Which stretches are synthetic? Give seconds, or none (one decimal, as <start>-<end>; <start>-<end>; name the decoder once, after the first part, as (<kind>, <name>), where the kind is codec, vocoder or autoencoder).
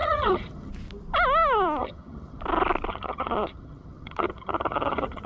0.0-0.7 (vocoder, HiFi-GAN); 1.8-2.4; 2.9-5.3